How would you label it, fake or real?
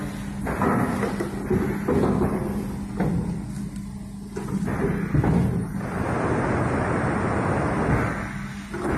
real